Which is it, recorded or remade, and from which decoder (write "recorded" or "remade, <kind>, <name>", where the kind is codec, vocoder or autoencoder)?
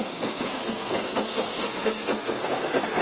remade, codec, SNAC